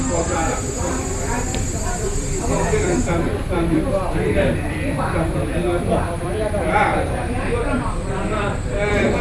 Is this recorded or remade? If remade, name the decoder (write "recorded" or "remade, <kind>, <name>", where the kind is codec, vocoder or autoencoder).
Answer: remade, vocoder, BigVGAN v2